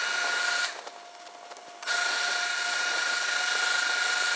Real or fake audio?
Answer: real